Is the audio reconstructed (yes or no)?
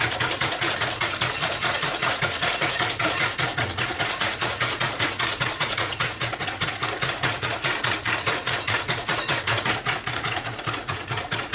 yes